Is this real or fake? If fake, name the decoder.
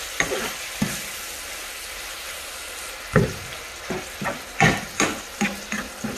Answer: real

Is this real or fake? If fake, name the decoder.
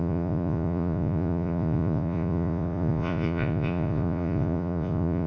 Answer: fake, vocoder, Vocos